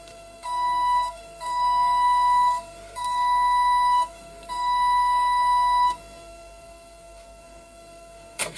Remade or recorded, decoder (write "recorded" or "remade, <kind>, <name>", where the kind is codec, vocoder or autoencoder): remade, codec, SNAC